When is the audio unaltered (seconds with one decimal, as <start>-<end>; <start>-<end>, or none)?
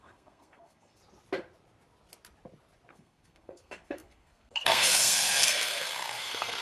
1.0-2.9